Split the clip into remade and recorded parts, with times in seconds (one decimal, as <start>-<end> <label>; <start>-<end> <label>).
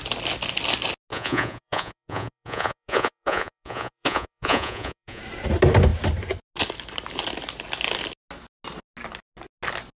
0.0-1.1 recorded; 1.1-5.2 remade; 5.2-10.0 recorded